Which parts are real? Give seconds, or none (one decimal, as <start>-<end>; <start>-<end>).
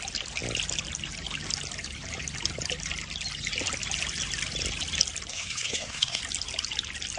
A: 0.0-5.3; 6.2-7.2